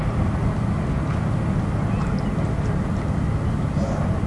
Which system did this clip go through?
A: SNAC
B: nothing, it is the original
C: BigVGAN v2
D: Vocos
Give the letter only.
B